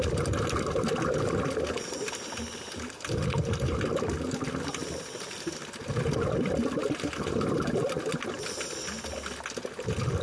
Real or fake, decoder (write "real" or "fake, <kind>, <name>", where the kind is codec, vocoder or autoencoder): real